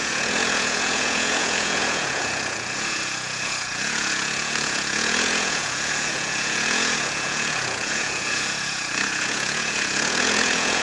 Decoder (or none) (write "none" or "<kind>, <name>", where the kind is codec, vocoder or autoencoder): vocoder, Vocos